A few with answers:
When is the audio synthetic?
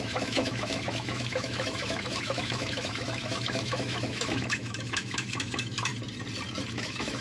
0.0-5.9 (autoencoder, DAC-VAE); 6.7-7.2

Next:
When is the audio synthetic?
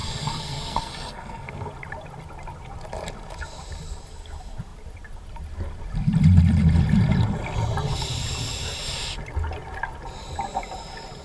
0.0-1.7 (codec, SNAC)